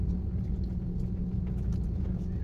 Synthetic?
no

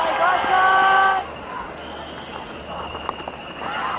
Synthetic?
no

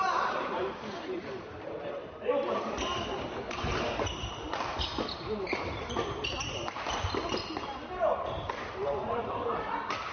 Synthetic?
yes